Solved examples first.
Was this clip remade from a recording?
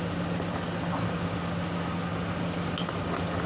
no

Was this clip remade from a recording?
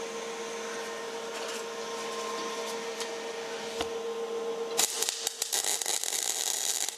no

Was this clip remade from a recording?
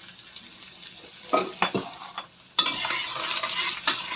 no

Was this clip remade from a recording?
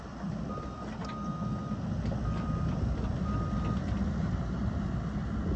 no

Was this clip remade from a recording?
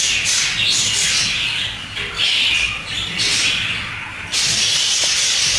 no